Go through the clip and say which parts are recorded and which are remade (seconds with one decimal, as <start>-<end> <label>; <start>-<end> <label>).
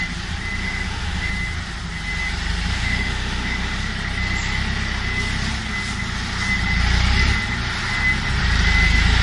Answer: 0.0-0.6 recorded; 0.6-1.3 remade; 1.3-2.7 recorded; 2.7-3.8 remade; 3.8-9.2 recorded